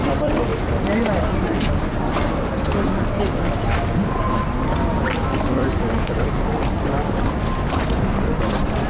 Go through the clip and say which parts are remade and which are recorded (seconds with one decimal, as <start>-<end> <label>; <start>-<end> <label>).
0.0-0.5 remade; 0.5-5.5 recorded; 5.5-8.9 remade

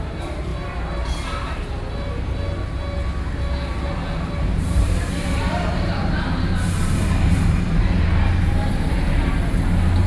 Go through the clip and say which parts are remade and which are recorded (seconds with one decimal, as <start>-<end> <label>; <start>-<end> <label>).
0.0-0.5 remade; 0.5-4.3 recorded; 4.3-10.1 remade

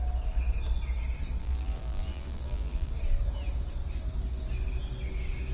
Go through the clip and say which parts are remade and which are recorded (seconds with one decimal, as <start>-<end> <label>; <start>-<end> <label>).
0.0-1.4 recorded; 1.4-2.9 remade; 2.9-5.5 recorded

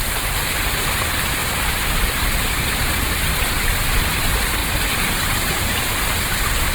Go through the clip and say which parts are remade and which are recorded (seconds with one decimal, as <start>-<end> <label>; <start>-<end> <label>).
0.0-1.4 recorded; 1.4-3.7 remade; 3.7-4.6 recorded; 4.6-5.8 remade; 5.8-6.7 recorded

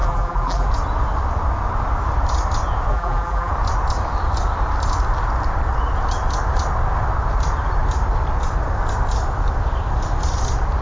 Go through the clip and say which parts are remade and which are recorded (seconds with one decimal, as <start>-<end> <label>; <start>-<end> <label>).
0.0-0.7 remade; 0.7-2.9 recorded; 2.9-3.5 remade; 3.5-10.8 recorded

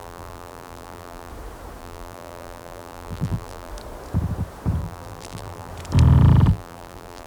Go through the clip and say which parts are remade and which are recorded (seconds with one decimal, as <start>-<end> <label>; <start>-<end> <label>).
0.0-1.3 remade; 1.3-1.8 recorded; 1.8-3.7 remade; 3.7-4.8 recorded; 4.8-5.7 remade; 5.7-6.5 recorded; 6.5-7.3 remade

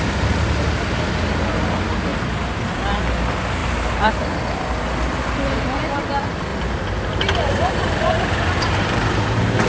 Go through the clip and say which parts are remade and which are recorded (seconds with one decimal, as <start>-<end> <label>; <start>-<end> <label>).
0.0-2.1 recorded; 2.1-2.7 remade; 2.7-3.6 recorded; 3.6-4.1 remade; 4.1-6.5 recorded; 6.5-9.7 remade